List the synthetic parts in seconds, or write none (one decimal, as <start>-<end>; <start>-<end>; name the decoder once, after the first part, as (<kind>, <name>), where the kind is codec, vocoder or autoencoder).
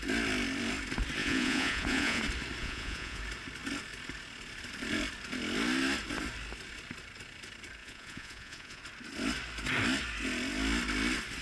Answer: 1.2-2.2 (vocoder, Vocos); 2.6-3.2; 7.8-8.8